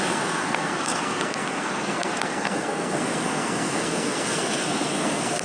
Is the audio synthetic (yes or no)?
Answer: yes